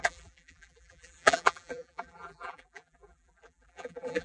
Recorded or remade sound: remade